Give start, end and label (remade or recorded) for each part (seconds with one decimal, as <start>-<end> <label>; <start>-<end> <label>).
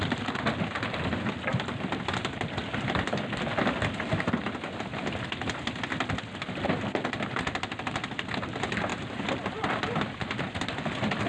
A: 0.0-11.3 recorded